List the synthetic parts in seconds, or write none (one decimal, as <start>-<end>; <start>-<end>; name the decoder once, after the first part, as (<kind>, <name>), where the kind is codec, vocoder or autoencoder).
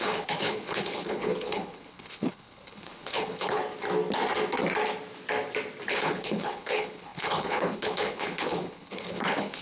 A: 0.0-3.6 (codec, HILCodec); 5.9-9.6